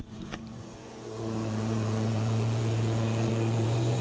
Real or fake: fake